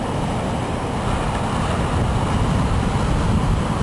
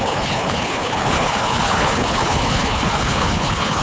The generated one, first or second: second